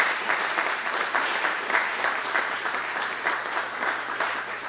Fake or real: fake